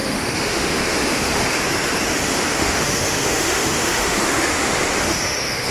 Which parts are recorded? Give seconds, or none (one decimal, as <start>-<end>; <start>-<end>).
1.6-2.1